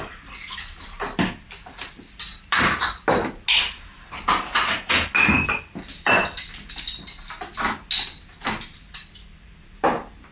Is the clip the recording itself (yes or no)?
yes